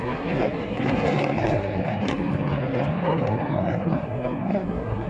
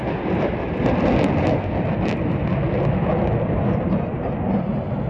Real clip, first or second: second